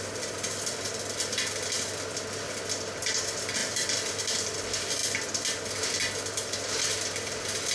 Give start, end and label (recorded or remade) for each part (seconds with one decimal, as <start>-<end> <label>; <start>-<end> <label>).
0.0-7.7 recorded